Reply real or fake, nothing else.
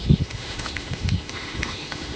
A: fake